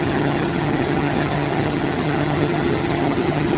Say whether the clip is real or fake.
fake